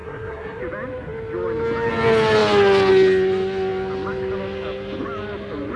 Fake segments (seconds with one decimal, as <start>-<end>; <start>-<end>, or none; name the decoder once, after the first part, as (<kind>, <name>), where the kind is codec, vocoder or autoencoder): 0.0-0.6 (codec, SNAC)